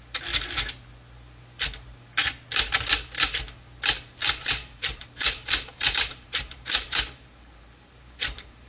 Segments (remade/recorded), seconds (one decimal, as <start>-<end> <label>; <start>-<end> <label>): 0.0-4.2 recorded; 4.2-8.7 remade